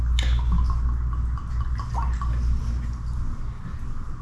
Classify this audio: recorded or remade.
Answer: recorded